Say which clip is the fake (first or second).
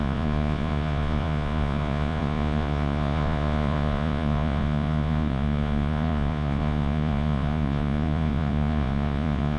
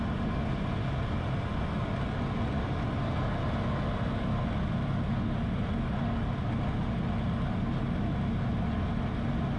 first